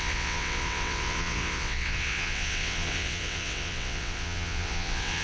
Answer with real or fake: fake